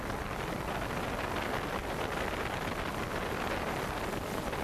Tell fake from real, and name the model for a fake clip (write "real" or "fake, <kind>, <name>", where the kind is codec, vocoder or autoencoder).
real